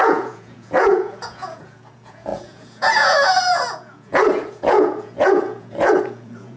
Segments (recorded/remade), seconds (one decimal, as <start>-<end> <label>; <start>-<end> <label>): 0.0-6.6 remade